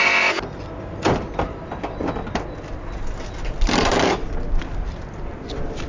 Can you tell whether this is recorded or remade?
recorded